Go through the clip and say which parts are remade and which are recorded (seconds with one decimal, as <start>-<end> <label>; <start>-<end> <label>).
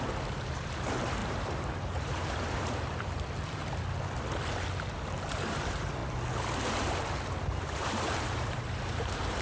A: 0.0-3.6 remade; 3.6-5.1 recorded; 5.1-6.0 remade; 6.0-7.6 recorded; 7.6-9.4 remade